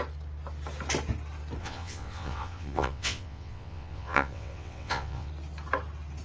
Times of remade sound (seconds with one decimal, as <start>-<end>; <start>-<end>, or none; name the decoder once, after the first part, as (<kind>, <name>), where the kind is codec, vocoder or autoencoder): 1.6-5.3 (vocoder, WaveNeXt)